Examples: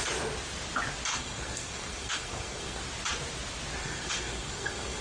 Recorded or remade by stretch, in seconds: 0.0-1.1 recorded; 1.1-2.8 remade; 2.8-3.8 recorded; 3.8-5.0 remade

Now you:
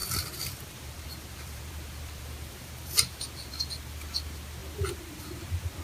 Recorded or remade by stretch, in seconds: 0.0-3.5 remade; 3.5-5.8 recorded

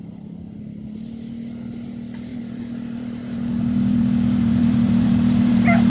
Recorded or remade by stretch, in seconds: 0.0-2.3 recorded; 2.3-5.9 remade

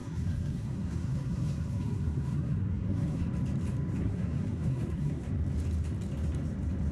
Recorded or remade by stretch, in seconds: 0.0-3.3 remade; 3.3-4.0 recorded; 4.0-5.3 remade; 5.3-6.9 recorded

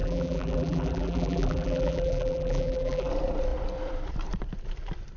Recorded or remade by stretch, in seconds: 0.0-3.1 remade; 3.1-5.2 recorded

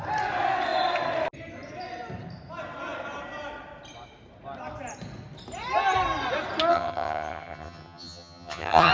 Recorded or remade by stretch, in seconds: 0.0-6.7 recorded; 6.7-8.9 remade

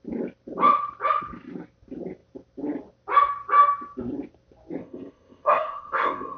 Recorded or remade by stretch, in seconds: 0.0-4.8 recorded; 4.8-6.4 remade